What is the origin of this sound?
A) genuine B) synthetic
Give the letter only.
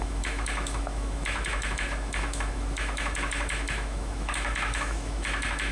B